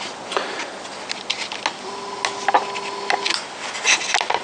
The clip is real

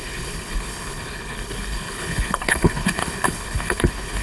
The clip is fake